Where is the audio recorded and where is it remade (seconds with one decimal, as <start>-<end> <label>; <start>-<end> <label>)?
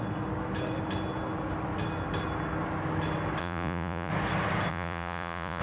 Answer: 0.0-3.4 recorded; 3.4-4.1 remade; 4.1-4.7 recorded; 4.7-5.6 remade